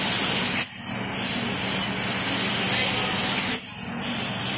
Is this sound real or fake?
real